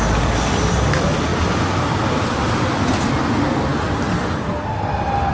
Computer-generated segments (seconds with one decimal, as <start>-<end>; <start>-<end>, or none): none